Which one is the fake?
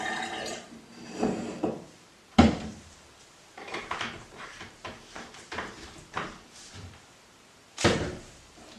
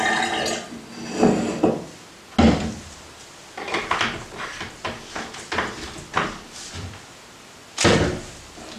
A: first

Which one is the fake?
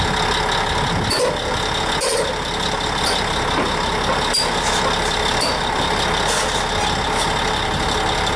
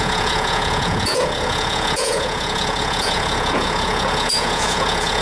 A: second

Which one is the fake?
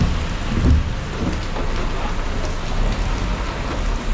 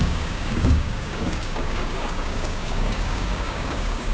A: second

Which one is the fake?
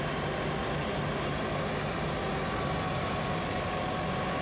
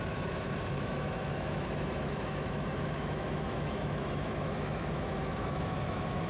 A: second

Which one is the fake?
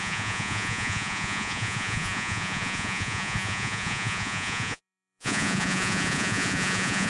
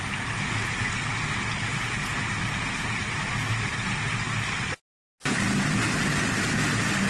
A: first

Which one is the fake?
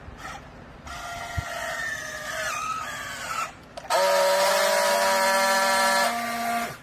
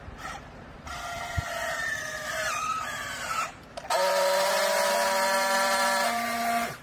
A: second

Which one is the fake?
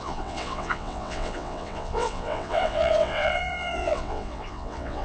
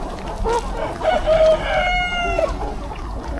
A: first